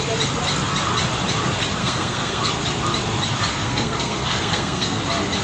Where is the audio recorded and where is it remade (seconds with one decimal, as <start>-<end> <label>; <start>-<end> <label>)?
0.0-1.8 recorded; 1.8-2.5 remade; 2.5-3.5 recorded; 3.5-5.0 remade; 5.0-5.4 recorded